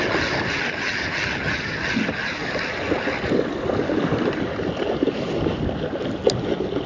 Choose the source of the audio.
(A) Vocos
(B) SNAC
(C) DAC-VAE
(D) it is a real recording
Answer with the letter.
D